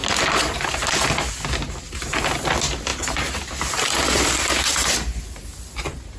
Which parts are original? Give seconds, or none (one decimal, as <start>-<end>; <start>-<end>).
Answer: 0.0-6.2